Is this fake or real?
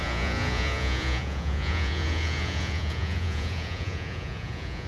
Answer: fake